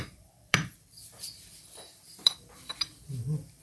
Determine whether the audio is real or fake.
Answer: fake